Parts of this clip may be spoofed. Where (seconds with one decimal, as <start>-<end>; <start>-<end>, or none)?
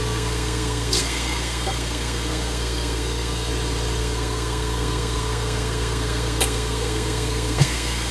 0.0-3.5; 4.0-8.1